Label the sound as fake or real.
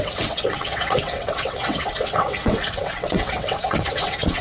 fake